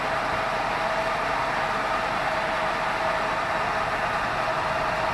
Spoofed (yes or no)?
no